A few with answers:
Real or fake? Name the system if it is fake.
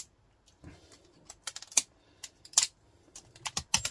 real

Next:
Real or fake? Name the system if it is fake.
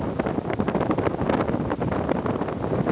real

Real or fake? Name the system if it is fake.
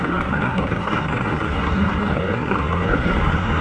fake, codec, SNAC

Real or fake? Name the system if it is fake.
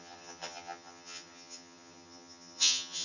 fake, vocoder, HiFi-GAN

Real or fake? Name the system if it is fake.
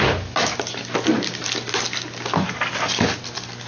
real